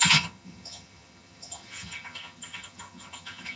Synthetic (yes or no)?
yes